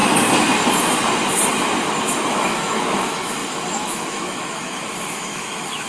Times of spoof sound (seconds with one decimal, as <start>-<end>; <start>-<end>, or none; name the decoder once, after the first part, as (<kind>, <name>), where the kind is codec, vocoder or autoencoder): 2.3-5.9 (autoencoder, DAC-VAE)